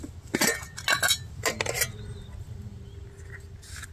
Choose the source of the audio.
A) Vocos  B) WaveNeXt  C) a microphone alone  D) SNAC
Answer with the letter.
C